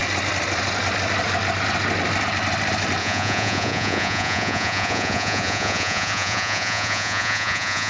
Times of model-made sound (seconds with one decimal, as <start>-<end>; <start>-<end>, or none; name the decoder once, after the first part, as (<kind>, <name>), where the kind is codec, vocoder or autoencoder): 3.0-7.9 (vocoder, Vocos)